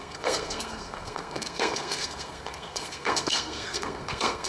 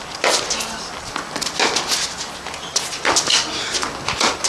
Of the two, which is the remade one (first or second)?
first